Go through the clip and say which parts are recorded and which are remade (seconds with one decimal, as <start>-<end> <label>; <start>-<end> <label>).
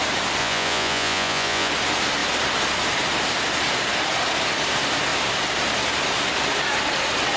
0.0-0.4 recorded; 0.4-1.7 remade; 1.7-7.4 recorded